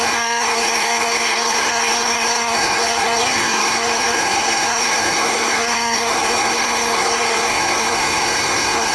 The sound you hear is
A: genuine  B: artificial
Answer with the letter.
B